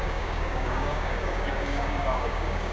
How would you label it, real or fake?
fake